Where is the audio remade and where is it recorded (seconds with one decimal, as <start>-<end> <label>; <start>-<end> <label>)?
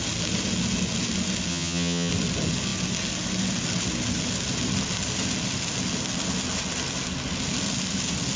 0.0-1.5 recorded; 1.5-2.1 remade; 2.1-8.4 recorded